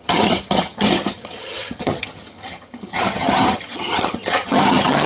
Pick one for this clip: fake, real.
fake